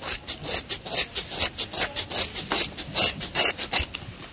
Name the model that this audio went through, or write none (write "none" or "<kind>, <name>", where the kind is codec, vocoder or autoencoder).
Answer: none